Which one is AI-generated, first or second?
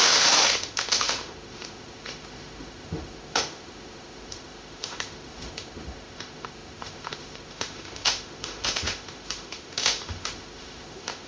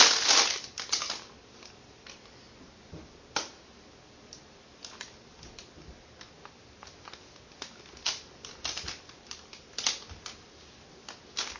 first